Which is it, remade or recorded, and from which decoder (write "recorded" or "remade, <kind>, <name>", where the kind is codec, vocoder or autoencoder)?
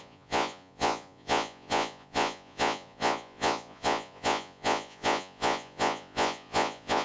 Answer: remade, vocoder, Vocos